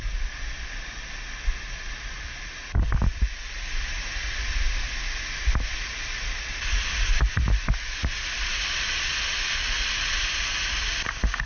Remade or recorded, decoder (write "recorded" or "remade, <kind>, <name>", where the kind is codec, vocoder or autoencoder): recorded